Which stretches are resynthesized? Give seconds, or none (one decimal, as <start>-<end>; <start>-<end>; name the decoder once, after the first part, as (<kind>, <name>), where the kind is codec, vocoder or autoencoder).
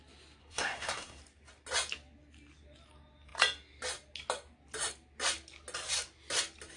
0.4-1.2 (codec, SNAC)